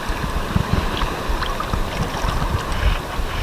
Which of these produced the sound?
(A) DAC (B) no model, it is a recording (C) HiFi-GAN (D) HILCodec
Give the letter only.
B